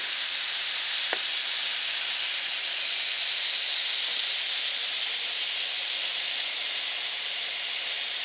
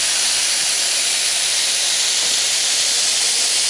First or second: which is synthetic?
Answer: first